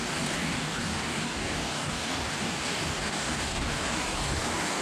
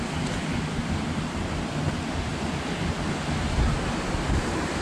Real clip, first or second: second